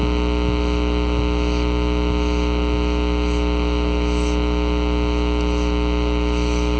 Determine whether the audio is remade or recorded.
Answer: recorded